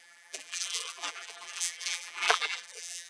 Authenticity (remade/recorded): remade